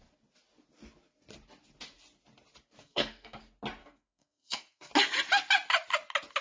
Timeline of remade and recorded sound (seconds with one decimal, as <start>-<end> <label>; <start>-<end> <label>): 0.0-2.8 recorded; 2.8-3.4 remade; 3.4-3.8 recorded; 3.8-4.9 remade; 4.9-6.4 recorded